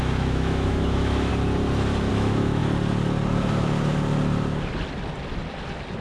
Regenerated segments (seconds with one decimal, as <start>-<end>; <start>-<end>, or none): 0.0-1.3; 2.1-2.6